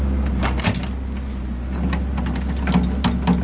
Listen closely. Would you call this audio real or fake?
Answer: real